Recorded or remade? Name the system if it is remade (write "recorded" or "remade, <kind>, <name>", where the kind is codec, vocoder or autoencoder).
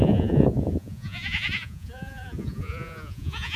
remade, vocoder, Vocos